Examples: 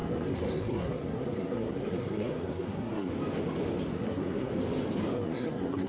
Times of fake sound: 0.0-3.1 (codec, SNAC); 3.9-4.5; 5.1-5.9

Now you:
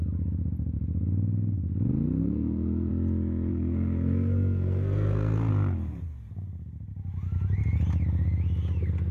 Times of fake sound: 2.2-2.9 (codec, SNAC); 3.5-5.5

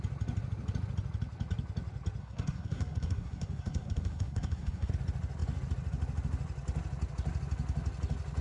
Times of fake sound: 2.2-4.9 (codec, SNAC)

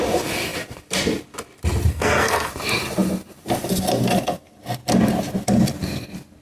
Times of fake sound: 1.9-2.5 (codec, SNAC)

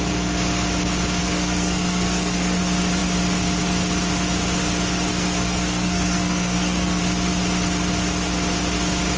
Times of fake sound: 1.2-2.6 (codec, SNAC); 5.1-7.0

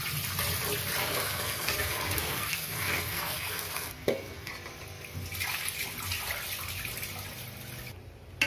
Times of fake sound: 1.0-4.5 (codec, SNAC)

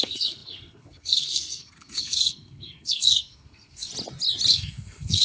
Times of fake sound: 0.0-3.9 (codec, SNAC); 4.5-5.2

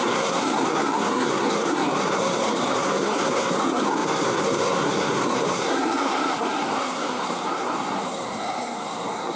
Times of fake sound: 0.0-9.4 (codec, SNAC)